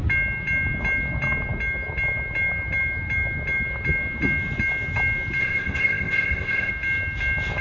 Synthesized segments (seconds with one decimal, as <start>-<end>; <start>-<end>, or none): 5.4-6.7